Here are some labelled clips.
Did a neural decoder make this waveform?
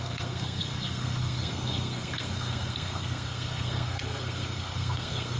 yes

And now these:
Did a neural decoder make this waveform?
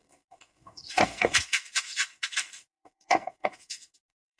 yes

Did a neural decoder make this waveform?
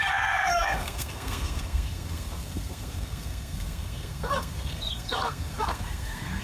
yes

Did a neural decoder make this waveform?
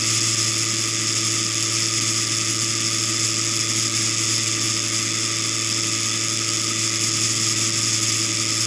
no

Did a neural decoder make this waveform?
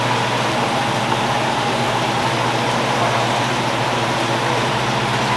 no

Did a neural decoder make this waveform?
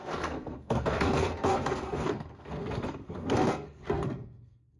yes